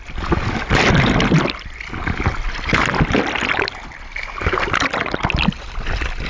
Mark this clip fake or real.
real